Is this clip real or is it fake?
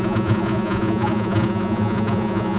fake